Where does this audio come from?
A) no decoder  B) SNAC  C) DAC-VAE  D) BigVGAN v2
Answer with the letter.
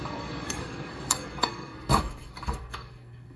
B